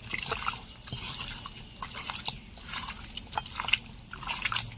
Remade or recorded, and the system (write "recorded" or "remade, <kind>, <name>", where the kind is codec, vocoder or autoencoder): recorded